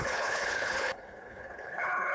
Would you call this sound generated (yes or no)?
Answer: yes